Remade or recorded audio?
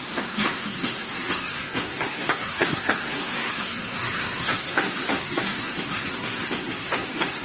remade